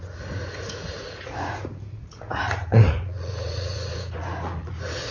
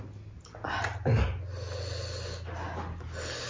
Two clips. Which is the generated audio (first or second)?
first